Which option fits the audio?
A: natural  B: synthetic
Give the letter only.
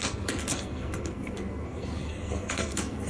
B